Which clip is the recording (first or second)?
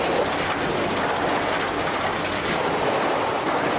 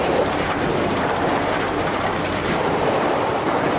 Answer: first